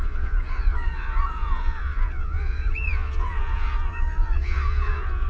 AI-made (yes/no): yes